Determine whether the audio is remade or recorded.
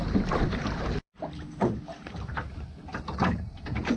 remade